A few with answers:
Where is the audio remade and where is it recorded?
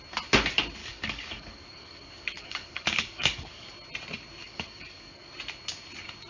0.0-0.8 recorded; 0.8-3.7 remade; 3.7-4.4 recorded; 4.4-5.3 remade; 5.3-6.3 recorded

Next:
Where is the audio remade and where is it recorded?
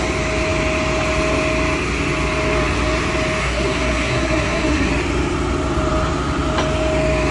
0.0-3.4 recorded; 3.4-4.9 remade; 4.9-7.3 recorded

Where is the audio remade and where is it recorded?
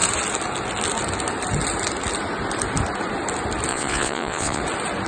0.0-3.7 recorded; 3.7-4.6 remade; 4.6-5.1 recorded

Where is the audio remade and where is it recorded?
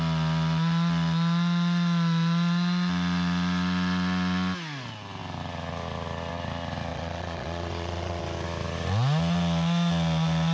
0.0-6.9 recorded; 6.9-8.2 remade; 8.2-10.5 recorded